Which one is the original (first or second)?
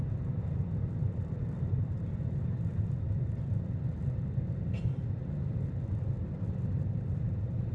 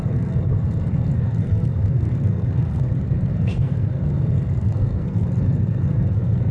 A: first